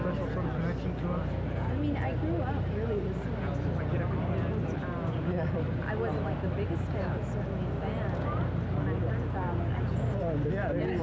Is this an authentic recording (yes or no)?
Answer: yes